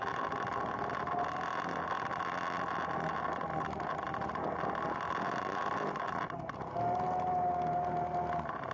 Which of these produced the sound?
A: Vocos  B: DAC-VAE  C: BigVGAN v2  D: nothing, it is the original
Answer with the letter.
D